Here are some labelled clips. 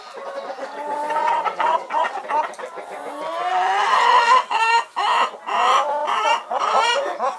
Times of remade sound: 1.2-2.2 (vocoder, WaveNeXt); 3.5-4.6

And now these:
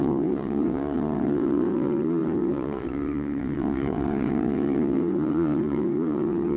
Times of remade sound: 0.0-6.6 (vocoder, WaveNeXt)

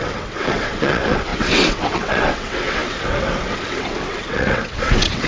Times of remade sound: 0.0-5.3 (vocoder, WaveNeXt)